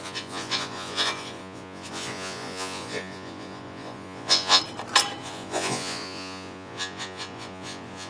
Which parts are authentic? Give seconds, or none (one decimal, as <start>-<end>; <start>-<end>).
4.6-5.2